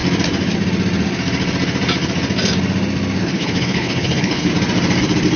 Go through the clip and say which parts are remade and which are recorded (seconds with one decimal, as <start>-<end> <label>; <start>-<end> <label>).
0.0-3.2 recorded; 3.2-4.5 remade; 4.5-5.4 recorded